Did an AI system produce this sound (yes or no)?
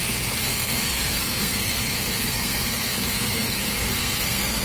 yes